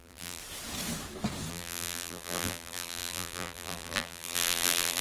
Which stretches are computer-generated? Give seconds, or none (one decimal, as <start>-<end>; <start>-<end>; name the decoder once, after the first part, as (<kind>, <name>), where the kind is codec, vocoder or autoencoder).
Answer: 0.0-0.4 (vocoder, BigVGAN v2); 1.5-5.0